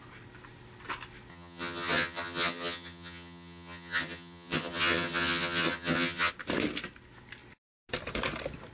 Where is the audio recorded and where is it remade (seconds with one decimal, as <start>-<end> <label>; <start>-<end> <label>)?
0.0-1.3 recorded; 1.3-6.3 remade; 6.3-8.7 recorded